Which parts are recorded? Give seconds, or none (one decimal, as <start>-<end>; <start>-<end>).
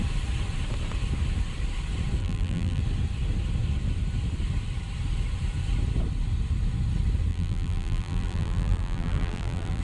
0.0-2.2; 2.8-7.3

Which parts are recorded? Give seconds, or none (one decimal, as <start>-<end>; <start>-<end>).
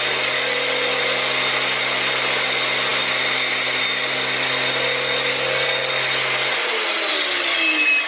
0.0-8.1